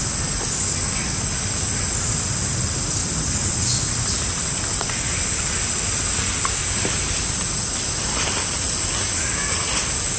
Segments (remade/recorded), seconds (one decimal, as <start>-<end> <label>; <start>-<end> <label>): 0.0-10.2 recorded